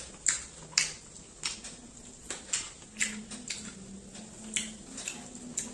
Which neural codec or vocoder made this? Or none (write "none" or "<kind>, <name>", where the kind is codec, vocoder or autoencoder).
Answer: none